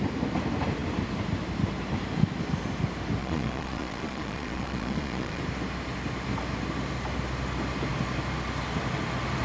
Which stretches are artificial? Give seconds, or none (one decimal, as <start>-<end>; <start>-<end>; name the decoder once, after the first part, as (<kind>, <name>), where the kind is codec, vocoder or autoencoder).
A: 3.2-5.4 (vocoder, Vocos)